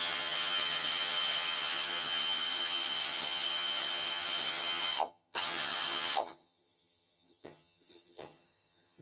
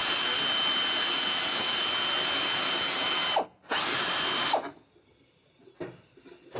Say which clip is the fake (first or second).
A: first